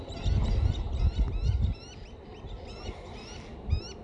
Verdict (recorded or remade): recorded